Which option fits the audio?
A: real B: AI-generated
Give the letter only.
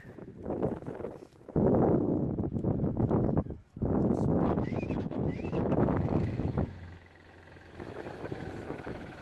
B